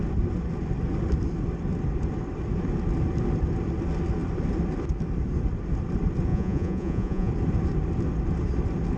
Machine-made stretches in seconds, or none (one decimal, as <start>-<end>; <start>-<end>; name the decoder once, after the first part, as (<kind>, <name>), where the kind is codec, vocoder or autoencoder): 6.3-7.3 (vocoder, Vocos)